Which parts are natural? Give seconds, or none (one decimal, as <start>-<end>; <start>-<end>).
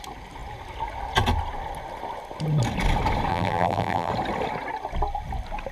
0.0-3.3; 4.1-5.7